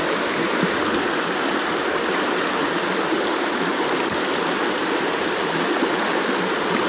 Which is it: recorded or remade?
recorded